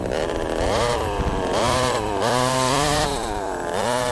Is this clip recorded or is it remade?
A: remade